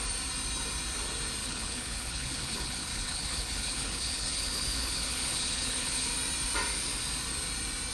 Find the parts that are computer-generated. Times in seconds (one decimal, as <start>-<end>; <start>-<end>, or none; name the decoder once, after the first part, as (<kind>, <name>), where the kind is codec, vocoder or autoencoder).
1.4-6.1 (codec, HILCodec)